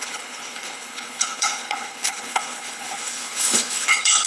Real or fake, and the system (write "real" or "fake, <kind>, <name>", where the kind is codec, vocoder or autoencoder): fake, codec, HILCodec